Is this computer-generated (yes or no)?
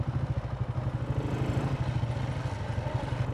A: no